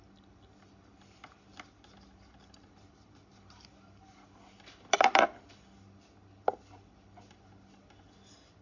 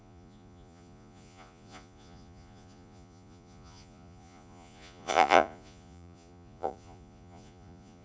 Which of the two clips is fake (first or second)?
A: second